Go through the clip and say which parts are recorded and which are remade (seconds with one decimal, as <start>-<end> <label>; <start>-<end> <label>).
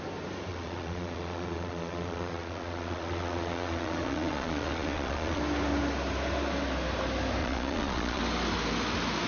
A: 0.0-0.5 recorded; 0.5-5.4 remade; 5.4-7.4 recorded; 7.4-8.2 remade; 8.2-9.3 recorded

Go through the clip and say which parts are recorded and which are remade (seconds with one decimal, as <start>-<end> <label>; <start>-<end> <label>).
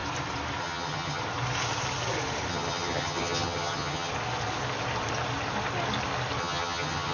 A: 0.0-0.6 recorded; 0.6-1.2 remade; 1.2-2.5 recorded; 2.5-4.1 remade; 4.1-6.4 recorded; 6.4-7.1 remade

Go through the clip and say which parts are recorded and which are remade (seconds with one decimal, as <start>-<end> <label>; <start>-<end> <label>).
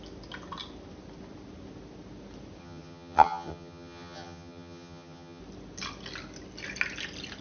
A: 0.0-2.6 recorded; 2.6-5.4 remade; 5.4-7.4 recorded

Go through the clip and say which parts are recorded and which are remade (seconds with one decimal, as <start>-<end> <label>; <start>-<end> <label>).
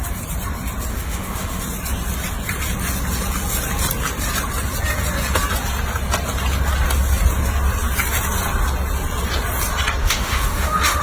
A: 0.0-0.9 recorded; 0.9-1.6 remade; 1.6-10.0 recorded; 10.0-11.0 remade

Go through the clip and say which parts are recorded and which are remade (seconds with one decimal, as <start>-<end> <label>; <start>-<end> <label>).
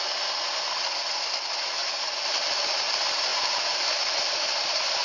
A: 0.0-1.8 recorded; 1.8-2.9 remade; 2.9-3.3 recorded; 3.3-5.0 remade